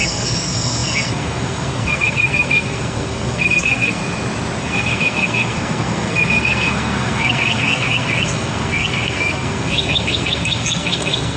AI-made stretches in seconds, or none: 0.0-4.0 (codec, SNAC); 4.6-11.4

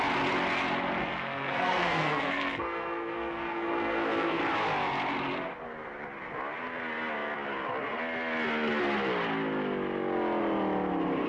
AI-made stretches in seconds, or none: 1.0-4.4 (codec, SNAC)

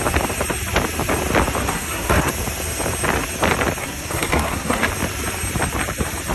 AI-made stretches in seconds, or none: 1.6-2.3 (codec, SNAC); 3.8-4.9

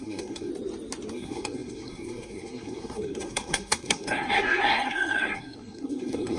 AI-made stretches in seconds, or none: 0.0-0.5 (codec, SNAC); 1.1-6.4

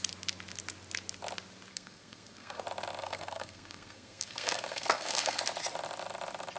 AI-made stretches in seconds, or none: 1.7-2.6 (codec, SNAC); 3.0-5.4